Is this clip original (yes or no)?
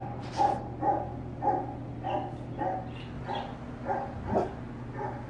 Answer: yes